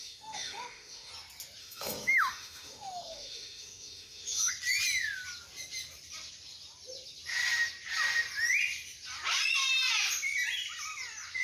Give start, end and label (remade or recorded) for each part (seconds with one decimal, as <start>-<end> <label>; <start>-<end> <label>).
0.0-1.1 remade; 1.1-1.6 recorded; 1.6-4.5 remade; 4.5-11.4 recorded